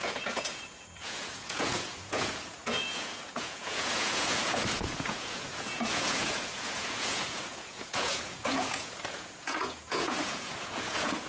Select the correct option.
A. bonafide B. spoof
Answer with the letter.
B